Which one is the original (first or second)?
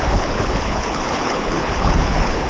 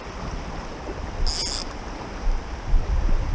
second